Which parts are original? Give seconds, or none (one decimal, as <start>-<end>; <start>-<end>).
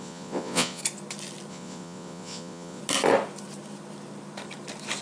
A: 0.8-1.5; 2.8-5.0